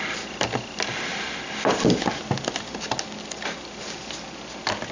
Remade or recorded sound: recorded